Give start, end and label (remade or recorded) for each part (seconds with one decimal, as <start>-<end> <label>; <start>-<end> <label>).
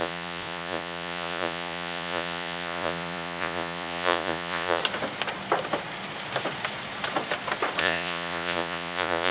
0.0-4.8 remade; 4.8-7.8 recorded; 7.8-9.3 remade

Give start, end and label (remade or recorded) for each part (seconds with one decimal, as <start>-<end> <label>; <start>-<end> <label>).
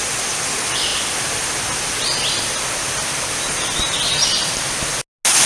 0.0-5.5 recorded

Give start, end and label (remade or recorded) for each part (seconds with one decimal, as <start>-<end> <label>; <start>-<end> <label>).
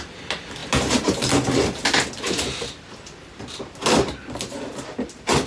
0.0-5.5 recorded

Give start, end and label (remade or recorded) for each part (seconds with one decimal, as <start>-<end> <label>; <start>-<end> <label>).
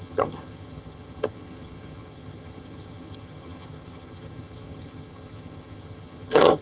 0.0-6.6 remade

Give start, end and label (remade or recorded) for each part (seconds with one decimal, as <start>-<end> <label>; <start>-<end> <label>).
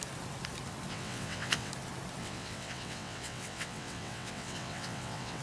0.0-0.9 recorded; 0.9-1.7 remade; 1.7-2.2 recorded; 2.2-5.4 remade